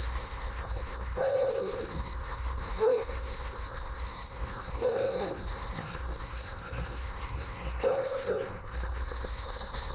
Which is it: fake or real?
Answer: fake